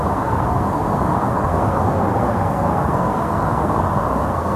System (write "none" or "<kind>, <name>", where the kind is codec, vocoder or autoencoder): codec, SNAC